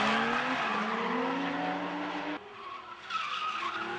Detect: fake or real real